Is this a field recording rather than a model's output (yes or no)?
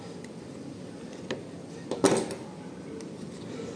yes